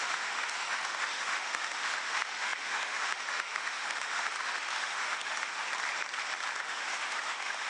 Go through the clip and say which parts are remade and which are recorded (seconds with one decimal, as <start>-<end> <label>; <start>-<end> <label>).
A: 0.0-5.6 remade; 5.6-6.6 recorded; 6.6-7.7 remade